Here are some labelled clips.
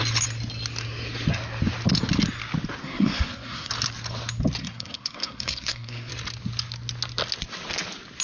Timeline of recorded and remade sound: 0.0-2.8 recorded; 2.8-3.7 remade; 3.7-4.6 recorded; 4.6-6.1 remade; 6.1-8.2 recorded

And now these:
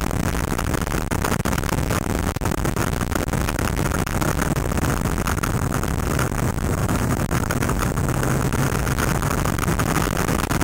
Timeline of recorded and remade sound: 0.0-6.8 recorded; 6.8-7.9 remade; 7.9-10.6 recorded

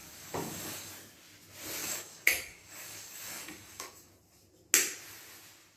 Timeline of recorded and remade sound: 0.0-0.9 remade; 0.9-1.8 recorded; 1.8-4.1 remade; 4.1-5.8 recorded